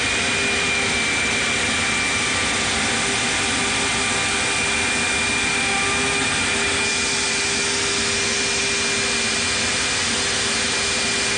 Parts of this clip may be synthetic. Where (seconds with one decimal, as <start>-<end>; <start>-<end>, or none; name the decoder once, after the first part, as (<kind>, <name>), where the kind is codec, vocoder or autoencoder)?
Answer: none